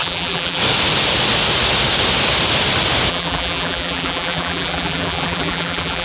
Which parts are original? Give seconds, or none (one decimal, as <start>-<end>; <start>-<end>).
0.6-3.1